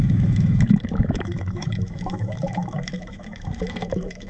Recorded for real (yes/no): no